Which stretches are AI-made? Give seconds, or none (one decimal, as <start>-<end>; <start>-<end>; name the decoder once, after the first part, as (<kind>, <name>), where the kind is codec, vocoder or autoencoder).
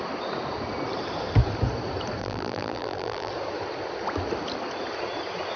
2.2-3.3 (vocoder, BigVGAN v2)